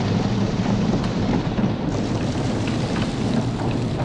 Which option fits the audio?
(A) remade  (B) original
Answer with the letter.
A